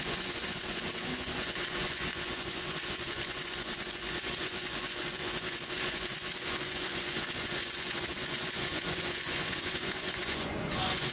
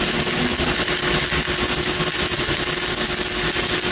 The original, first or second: second